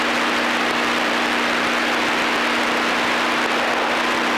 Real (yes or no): yes